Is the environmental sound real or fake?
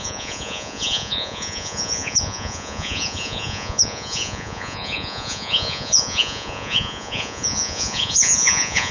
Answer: fake